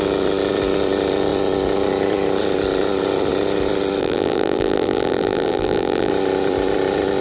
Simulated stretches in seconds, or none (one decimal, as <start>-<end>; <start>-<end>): 4.0-6.1